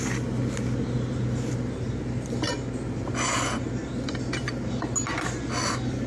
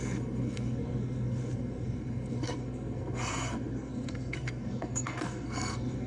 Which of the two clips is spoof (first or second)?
second